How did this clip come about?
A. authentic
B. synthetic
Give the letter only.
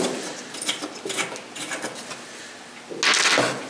A